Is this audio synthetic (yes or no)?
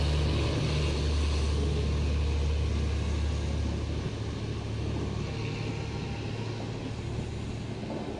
no